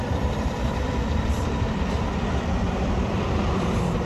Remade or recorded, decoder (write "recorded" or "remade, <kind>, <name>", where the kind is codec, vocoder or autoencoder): remade, vocoder, BigVGAN v2